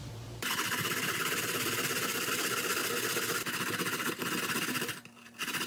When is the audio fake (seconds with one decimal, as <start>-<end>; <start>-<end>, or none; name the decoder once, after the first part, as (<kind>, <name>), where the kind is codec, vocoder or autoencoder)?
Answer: 0.0-2.8 (vocoder, BigVGAN v2); 4.4-5.7